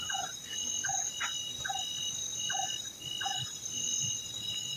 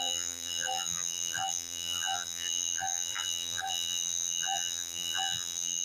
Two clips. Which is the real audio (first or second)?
first